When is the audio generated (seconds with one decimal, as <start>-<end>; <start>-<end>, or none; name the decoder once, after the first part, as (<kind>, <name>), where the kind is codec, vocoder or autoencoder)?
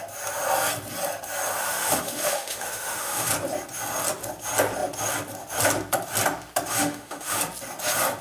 1.6-3.3 (autoencoder, DAC-VAE); 6.7-7.4